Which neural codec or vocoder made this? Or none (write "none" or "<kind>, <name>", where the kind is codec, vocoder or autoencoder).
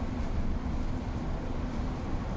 none